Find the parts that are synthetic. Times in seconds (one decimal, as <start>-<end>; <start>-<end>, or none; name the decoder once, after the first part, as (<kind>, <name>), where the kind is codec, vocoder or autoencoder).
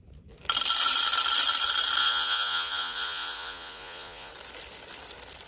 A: 2.0-4.3 (vocoder, Vocos)